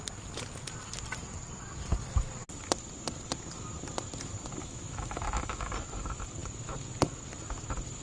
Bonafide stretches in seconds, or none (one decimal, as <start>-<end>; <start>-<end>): 0.0-4.6; 5.7-8.0